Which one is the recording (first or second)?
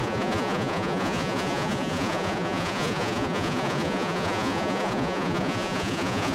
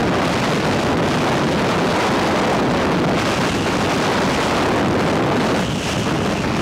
second